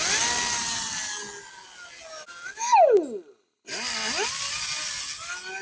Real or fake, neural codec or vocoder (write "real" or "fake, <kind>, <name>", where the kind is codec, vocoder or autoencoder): real